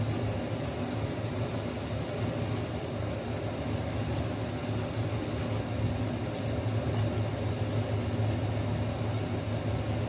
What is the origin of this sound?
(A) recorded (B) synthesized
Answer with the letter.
A